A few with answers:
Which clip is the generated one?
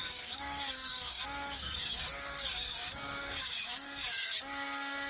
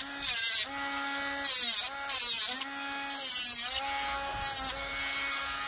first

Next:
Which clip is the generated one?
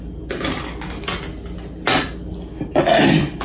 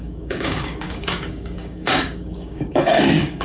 second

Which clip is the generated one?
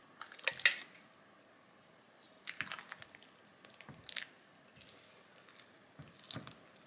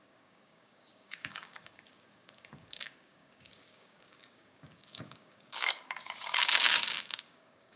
second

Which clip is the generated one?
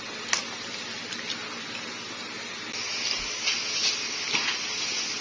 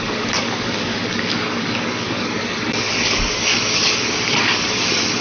second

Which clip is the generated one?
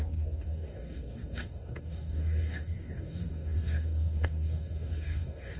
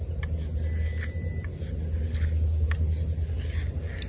first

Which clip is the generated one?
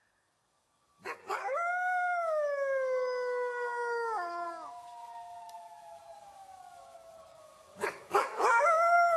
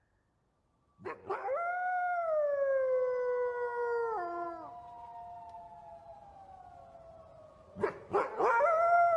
first